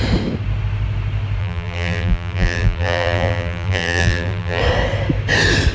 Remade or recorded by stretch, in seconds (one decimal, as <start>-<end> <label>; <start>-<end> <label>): 0.0-1.4 recorded; 1.4-4.6 remade; 4.6-5.7 recorded